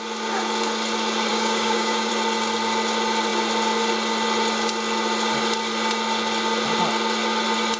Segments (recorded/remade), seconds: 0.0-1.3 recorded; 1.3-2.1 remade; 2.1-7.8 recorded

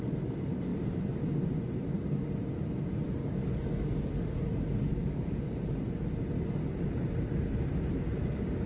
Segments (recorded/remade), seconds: 0.0-3.2 recorded; 3.2-4.4 remade; 4.4-4.9 recorded; 4.9-5.6 remade; 5.6-8.7 recorded